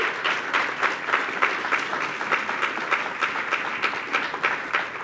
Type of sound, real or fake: real